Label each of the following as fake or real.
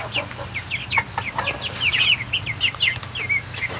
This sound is real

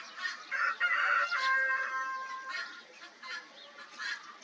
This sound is real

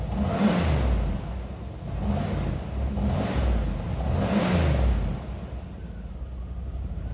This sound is real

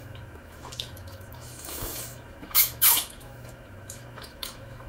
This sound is fake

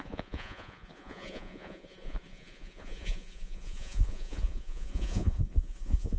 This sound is fake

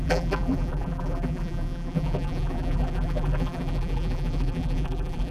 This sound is fake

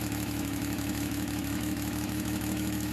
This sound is fake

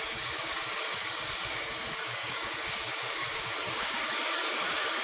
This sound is fake